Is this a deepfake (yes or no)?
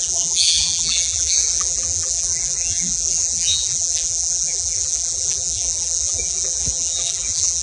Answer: yes